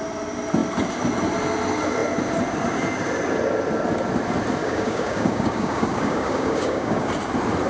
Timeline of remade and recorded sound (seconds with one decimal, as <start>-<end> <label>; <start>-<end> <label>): 0.0-4.6 recorded; 4.6-7.1 remade; 7.1-7.7 recorded